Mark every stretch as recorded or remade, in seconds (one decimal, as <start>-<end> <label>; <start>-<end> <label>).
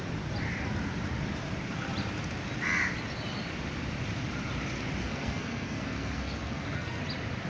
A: 0.0-5.0 recorded; 5.0-7.0 remade; 7.0-7.5 recorded